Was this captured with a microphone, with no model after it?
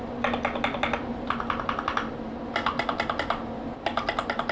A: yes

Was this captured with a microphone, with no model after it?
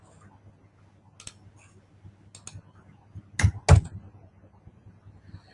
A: yes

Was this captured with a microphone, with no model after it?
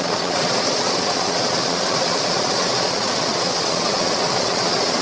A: no